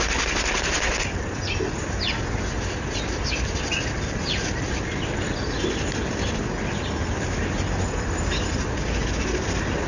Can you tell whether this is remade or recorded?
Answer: recorded